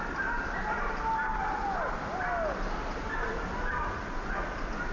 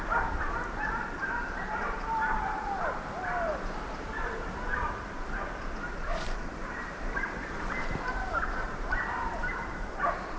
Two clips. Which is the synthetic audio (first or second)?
second